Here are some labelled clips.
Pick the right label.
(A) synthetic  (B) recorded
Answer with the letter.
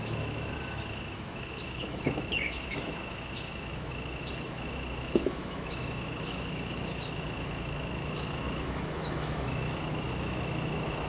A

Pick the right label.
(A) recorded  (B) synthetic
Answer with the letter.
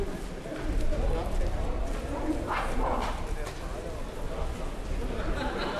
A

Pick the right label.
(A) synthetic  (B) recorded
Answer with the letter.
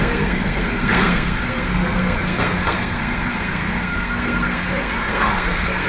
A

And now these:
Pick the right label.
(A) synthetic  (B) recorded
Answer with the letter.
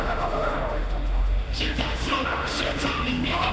A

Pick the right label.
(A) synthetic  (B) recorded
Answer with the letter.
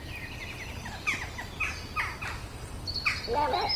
B